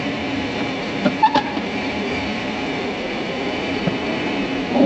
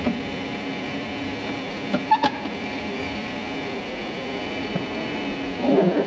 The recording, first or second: second